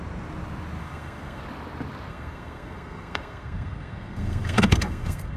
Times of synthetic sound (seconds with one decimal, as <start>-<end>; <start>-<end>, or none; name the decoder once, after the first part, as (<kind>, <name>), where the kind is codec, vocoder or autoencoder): 0.8-1.4 (codec, SNAC); 2.1-5.4